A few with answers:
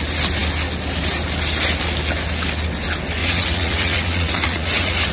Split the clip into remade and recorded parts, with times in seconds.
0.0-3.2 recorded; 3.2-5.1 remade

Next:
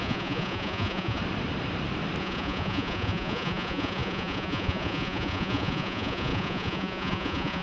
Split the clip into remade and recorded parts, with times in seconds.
0.0-1.2 remade; 1.2-2.2 recorded; 2.2-7.6 remade

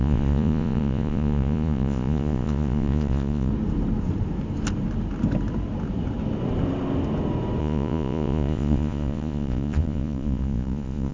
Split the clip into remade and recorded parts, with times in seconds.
0.0-3.5 remade; 3.5-7.6 recorded; 7.6-11.1 remade

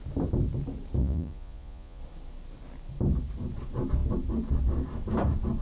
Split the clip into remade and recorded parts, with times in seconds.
0.0-1.0 recorded; 1.0-2.0 remade; 2.0-5.6 recorded

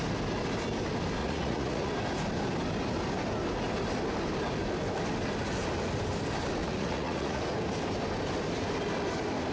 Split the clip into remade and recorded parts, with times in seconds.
0.0-1.2 recorded; 1.2-1.9 remade; 1.9-6.6 recorded; 6.6-7.4 remade; 7.4-9.5 recorded

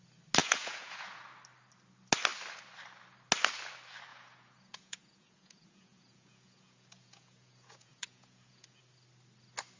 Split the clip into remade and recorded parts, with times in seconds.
0.0-0.4 recorded; 0.4-1.2 remade; 1.2-4.1 recorded; 4.1-8.8 remade; 8.8-9.8 recorded

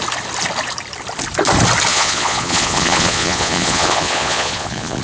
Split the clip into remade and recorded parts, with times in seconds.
0.0-1.9 recorded; 1.9-5.0 remade

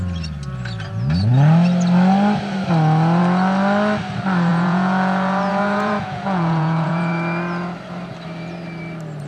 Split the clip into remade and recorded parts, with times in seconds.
0.0-4.5 recorded; 4.5-7.1 remade; 7.1-9.3 recorded